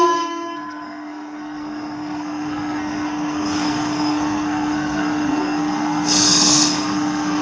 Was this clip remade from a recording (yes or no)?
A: yes